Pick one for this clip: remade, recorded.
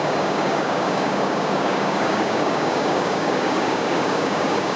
remade